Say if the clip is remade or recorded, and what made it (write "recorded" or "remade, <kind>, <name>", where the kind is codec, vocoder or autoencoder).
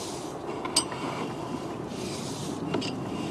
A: recorded